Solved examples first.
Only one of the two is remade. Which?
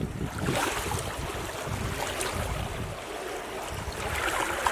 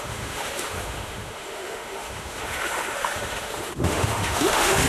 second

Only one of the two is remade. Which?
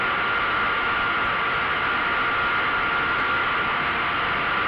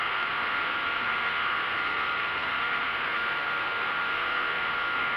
second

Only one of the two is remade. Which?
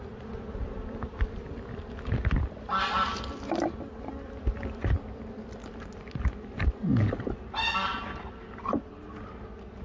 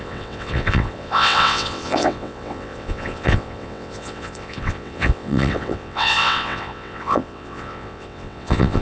second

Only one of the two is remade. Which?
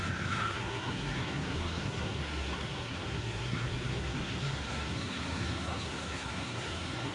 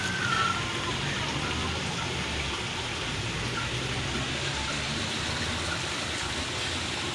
first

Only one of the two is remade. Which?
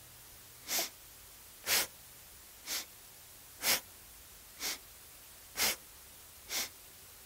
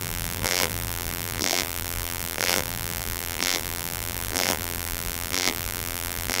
second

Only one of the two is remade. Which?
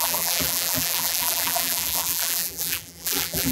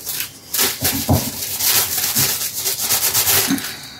first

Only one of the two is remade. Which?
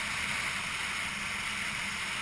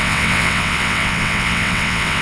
second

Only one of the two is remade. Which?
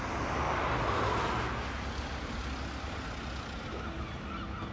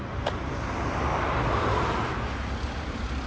second